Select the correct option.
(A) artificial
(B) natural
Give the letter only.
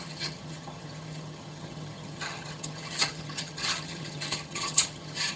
A